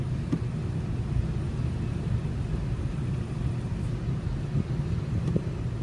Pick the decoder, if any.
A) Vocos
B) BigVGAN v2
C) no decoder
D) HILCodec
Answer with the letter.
C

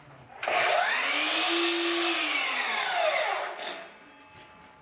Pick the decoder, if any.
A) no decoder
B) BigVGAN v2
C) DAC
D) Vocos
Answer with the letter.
A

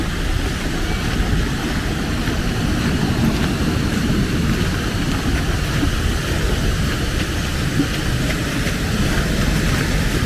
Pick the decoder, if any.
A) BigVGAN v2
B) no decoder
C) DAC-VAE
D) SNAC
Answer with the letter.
B